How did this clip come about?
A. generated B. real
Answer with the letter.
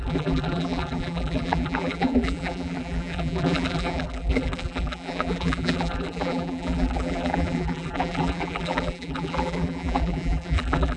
A